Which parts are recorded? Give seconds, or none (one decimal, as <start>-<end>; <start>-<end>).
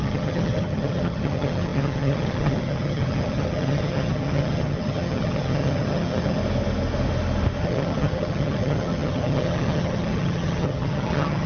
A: 6.4-7.6